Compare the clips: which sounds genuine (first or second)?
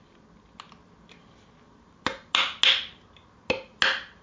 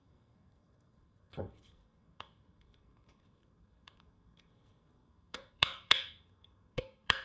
first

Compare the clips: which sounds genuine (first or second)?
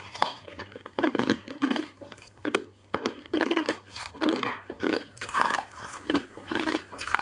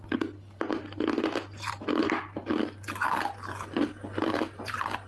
second